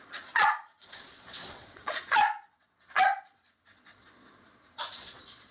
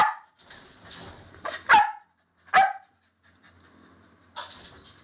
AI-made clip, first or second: first